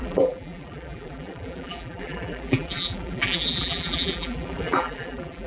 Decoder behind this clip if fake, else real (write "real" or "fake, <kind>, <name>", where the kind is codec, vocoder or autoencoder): fake, vocoder, BigVGAN v2